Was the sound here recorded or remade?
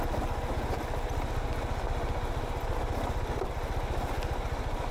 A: recorded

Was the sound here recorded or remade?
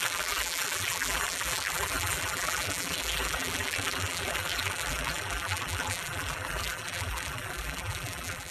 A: remade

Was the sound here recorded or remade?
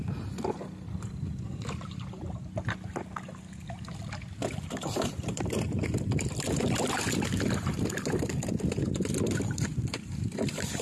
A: remade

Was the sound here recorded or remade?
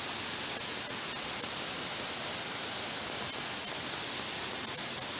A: recorded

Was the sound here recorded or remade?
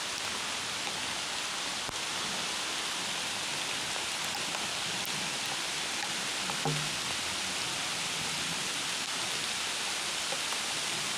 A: recorded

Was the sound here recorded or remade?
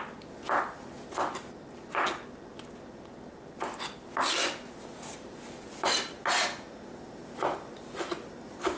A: recorded